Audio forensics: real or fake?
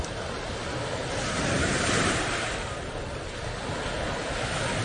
real